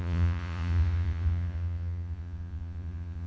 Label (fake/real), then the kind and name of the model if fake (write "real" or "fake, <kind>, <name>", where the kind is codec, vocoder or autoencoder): fake, vocoder, Vocos